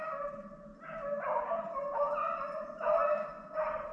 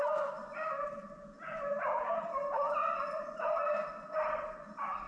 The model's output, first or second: second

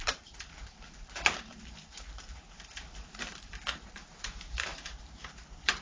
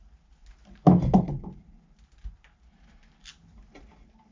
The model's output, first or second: first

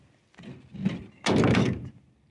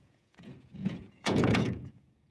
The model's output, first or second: second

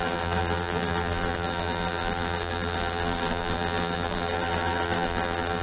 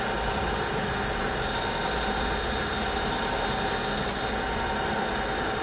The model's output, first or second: first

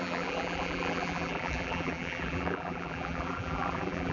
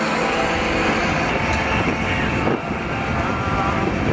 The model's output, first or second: first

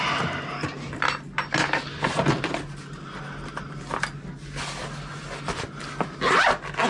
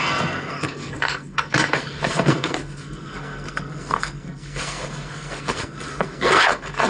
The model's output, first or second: second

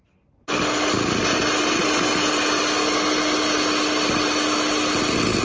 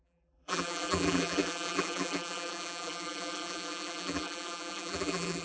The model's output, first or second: second